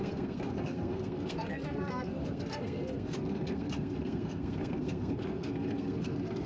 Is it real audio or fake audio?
fake